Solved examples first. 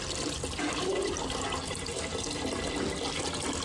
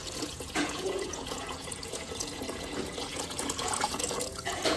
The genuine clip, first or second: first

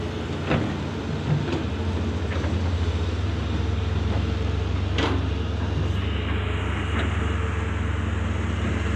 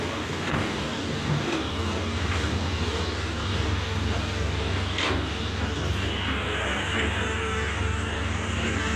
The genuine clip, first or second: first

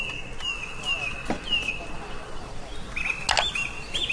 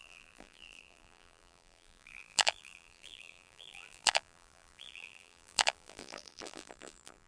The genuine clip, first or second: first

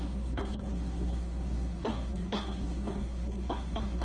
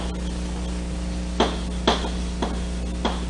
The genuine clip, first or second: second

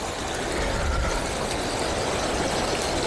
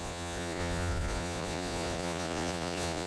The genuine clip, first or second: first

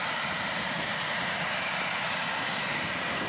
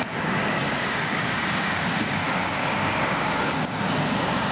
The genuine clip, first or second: first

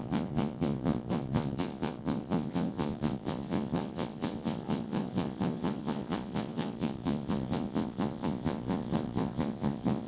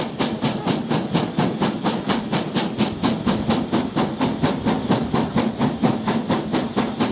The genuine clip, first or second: second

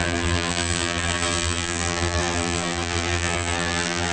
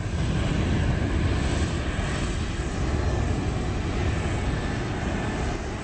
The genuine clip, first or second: second